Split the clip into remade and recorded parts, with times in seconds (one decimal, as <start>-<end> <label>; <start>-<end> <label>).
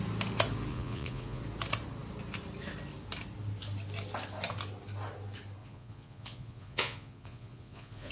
0.0-0.7 recorded; 0.7-1.4 remade; 1.4-5.6 recorded; 5.6-8.1 remade